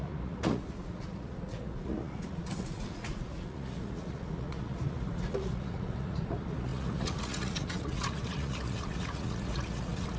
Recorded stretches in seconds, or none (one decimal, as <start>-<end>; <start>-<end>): none